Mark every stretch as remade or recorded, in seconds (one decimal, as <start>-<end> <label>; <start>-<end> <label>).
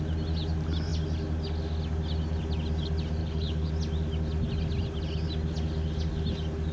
0.0-3.2 recorded; 3.2-3.7 remade; 3.7-6.7 recorded